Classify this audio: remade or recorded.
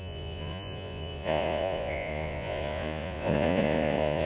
remade